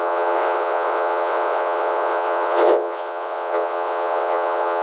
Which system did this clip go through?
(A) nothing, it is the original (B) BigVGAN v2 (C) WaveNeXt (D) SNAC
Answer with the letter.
C